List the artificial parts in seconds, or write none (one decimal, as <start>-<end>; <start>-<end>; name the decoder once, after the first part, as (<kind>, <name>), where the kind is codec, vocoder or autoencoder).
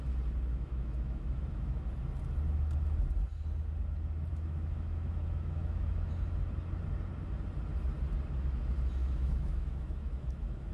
0.5-1.8 (autoencoder, DAC-VAE); 4.3-6.1; 9.0-10.7